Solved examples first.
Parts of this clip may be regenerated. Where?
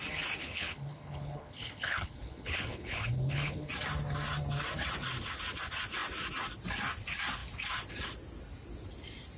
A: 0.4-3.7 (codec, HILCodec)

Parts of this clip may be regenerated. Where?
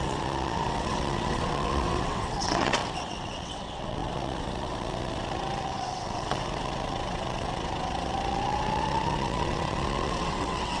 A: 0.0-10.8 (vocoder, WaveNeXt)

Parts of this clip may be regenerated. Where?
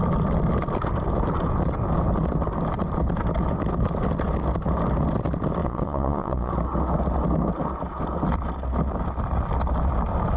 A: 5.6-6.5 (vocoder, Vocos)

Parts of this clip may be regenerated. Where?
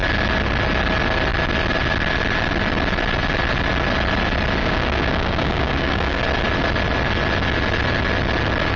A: 4.6-6.2 (codec, DAC)